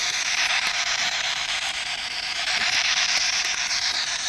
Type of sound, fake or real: fake